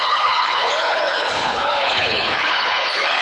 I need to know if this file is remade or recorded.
remade